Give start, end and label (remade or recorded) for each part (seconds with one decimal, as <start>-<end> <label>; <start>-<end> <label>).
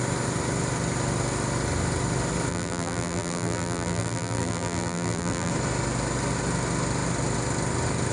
0.0-2.5 recorded; 2.5-5.5 remade; 5.5-8.1 recorded